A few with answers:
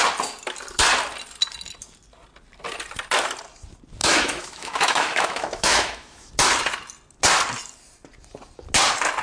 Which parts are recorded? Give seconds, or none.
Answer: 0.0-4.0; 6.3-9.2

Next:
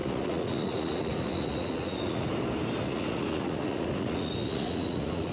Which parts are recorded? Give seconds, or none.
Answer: 2.3-2.8

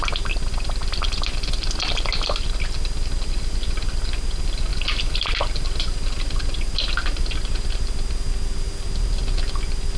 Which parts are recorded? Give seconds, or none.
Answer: 0.0-10.0

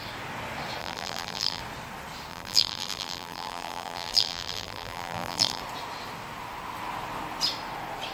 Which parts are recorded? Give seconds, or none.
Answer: 0.0-0.8; 1.6-2.3; 5.6-8.1

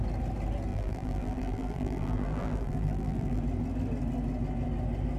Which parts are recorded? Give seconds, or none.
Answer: 0.0-0.7; 3.4-5.2